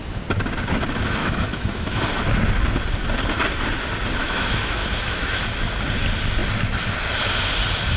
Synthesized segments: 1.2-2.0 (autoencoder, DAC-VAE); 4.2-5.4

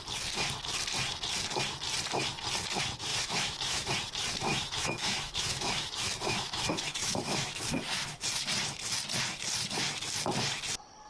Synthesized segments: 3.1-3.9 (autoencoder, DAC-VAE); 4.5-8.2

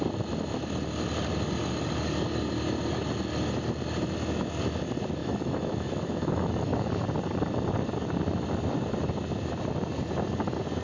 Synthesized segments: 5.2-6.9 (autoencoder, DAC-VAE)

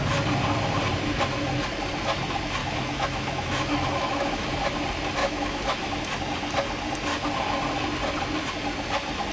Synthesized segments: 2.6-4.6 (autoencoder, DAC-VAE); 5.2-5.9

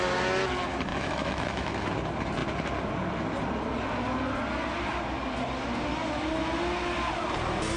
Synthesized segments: 0.9-1.9 (autoencoder, DAC-VAE)

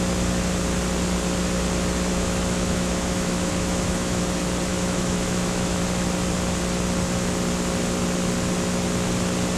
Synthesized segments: 2.1-4.2 (autoencoder, DAC-VAE); 4.7-5.8

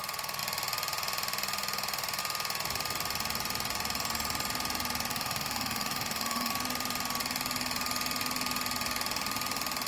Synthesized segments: 5.1-6.5 (autoencoder, DAC-VAE)

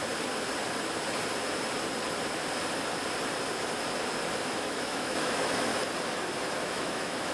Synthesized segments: 4.4-5.7 (autoencoder, DAC-VAE); 6.6-7.3